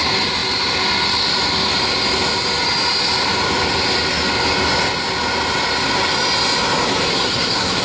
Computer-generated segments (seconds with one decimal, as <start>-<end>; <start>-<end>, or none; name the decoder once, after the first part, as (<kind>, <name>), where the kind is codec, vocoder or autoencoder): 7.1-7.8 (codec, SNAC)